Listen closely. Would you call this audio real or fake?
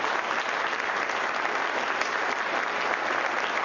real